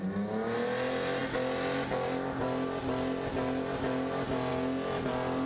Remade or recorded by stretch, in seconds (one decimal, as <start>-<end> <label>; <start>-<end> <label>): 0.0-5.5 recorded